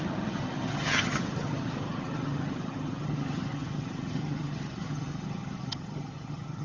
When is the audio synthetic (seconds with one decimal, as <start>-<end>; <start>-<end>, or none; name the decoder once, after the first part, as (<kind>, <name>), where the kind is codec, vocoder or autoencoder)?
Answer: 0.0-6.6 (vocoder, HiFi-GAN)